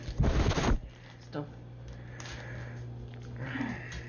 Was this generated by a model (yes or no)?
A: no